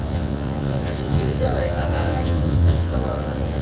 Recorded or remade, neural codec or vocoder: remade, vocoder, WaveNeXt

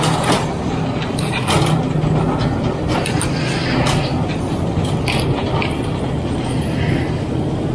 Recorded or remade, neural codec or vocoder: recorded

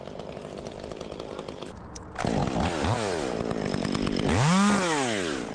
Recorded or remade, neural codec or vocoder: recorded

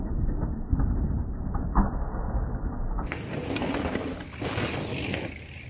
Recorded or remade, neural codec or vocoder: recorded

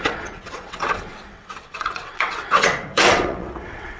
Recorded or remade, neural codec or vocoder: remade, vocoder, WaveNeXt